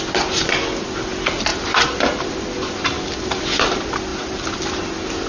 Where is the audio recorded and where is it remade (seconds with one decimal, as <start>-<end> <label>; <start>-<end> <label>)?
0.0-5.3 recorded